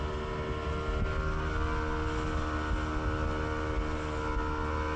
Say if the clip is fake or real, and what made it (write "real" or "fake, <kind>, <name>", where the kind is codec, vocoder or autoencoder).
real